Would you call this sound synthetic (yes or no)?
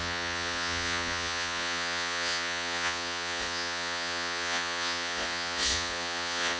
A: yes